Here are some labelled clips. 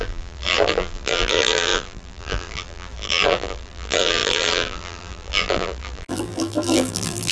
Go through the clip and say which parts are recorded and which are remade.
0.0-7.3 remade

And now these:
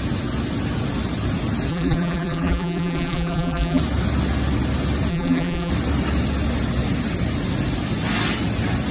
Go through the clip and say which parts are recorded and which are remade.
0.0-1.7 recorded; 1.7-3.8 remade; 3.8-5.1 recorded; 5.1-5.7 remade; 5.7-8.9 recorded

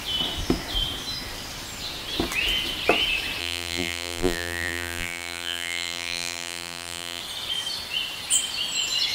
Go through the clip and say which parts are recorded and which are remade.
0.0-3.4 recorded; 3.4-7.2 remade; 7.2-9.1 recorded

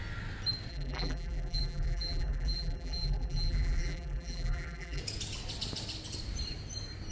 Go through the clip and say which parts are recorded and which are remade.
0.0-0.7 recorded; 0.7-5.0 remade; 5.0-7.1 recorded